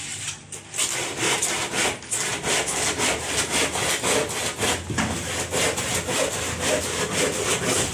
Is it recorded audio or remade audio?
recorded